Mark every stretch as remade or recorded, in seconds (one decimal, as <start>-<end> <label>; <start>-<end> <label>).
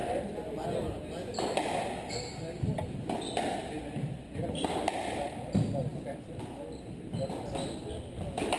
0.0-8.6 recorded